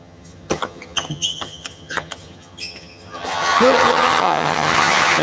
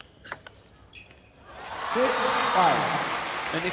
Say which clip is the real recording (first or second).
second